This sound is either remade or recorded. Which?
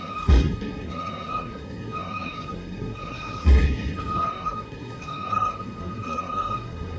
remade